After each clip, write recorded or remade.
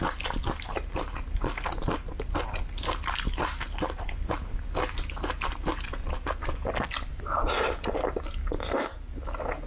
recorded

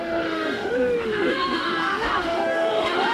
remade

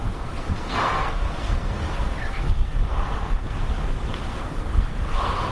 remade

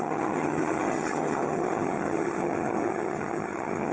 remade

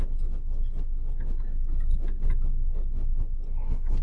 recorded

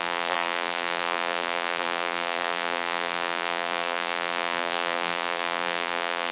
remade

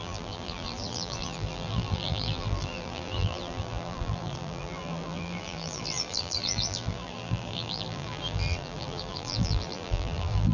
remade